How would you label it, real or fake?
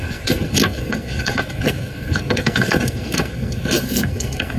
fake